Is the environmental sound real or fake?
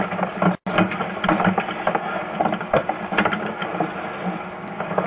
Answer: real